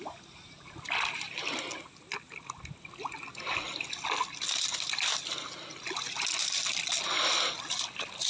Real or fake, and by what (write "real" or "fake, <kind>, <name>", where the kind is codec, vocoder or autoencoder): real